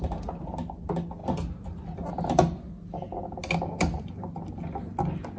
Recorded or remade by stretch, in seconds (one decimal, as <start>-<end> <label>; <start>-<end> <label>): 0.0-5.4 recorded